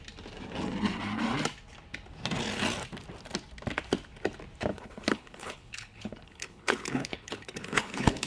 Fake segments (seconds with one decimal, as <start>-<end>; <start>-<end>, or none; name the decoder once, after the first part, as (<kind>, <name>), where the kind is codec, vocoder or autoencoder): 4.7-8.3 (codec, HILCodec)